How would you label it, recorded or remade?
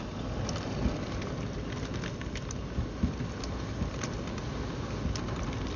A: recorded